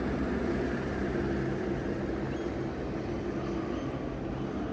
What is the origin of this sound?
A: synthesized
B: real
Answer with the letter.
B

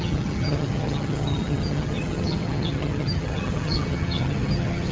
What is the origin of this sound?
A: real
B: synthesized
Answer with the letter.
B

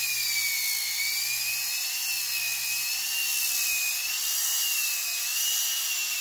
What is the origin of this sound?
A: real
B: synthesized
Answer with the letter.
A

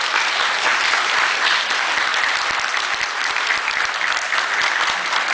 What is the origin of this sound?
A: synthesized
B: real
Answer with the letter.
B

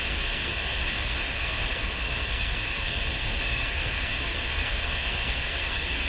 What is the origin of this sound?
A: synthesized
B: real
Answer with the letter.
A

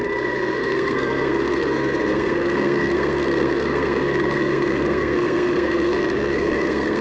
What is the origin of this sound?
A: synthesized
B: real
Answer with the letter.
A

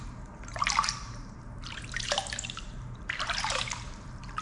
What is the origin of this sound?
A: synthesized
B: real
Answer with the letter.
A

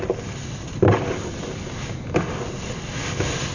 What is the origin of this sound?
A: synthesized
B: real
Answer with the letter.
B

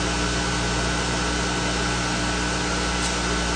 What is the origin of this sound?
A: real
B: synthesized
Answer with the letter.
A